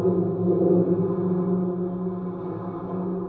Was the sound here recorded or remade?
recorded